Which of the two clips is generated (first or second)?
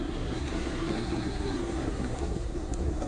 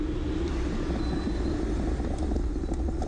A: first